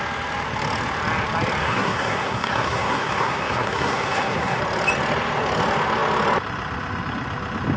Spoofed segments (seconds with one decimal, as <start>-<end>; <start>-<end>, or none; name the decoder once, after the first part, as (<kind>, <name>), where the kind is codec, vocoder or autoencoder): 1.6-4.6 (codec, SNAC)